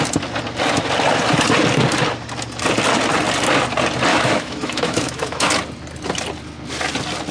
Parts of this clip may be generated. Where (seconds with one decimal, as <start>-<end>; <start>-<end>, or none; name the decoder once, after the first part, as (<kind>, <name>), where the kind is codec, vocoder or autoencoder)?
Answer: 4.1-5.5 (autoencoder, DAC-VAE)